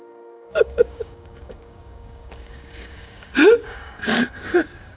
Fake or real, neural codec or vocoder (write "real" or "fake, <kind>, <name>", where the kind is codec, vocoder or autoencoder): fake, codec, DAC